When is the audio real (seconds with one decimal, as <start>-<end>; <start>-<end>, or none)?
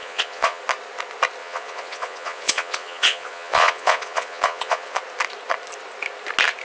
0.6-1.4; 5.0-6.6